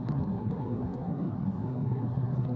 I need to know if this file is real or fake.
fake